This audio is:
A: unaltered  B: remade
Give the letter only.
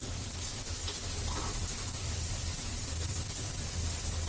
A